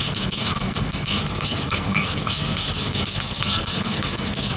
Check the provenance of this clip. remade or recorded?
remade